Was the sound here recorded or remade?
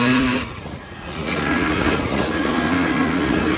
remade